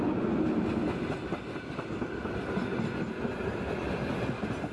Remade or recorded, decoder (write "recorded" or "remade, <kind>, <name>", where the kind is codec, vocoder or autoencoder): recorded